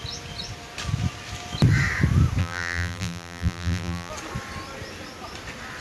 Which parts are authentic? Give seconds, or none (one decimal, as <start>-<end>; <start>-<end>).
0.0-2.4; 4.1-5.8